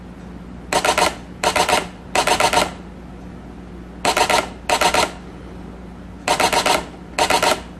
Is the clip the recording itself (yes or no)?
yes